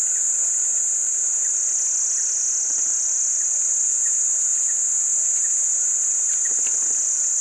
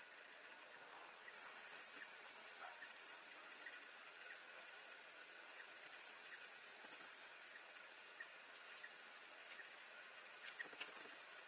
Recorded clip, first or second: first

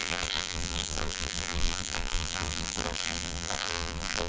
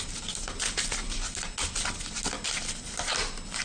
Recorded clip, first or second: second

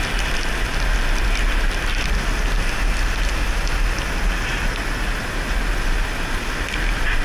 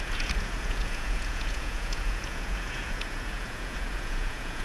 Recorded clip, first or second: first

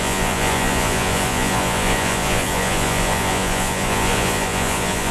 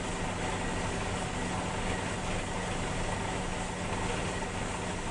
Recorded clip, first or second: second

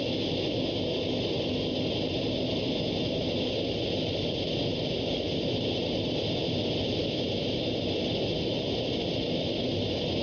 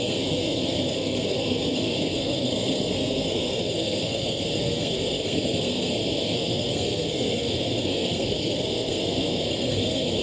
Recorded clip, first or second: first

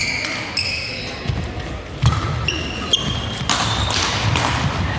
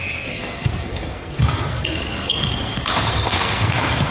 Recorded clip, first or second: first